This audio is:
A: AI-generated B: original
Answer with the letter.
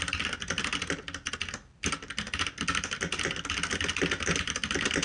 B